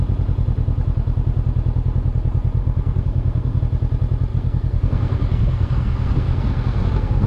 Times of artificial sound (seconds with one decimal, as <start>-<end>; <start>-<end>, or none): 2.6-3.6; 4.3-7.3